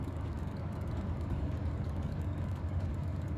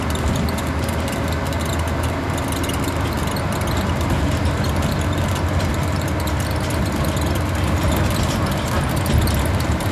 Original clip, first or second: second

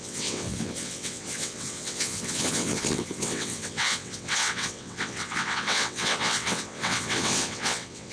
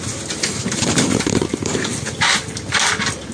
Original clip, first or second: second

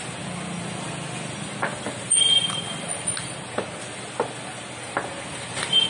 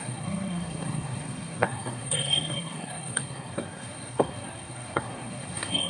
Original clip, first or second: first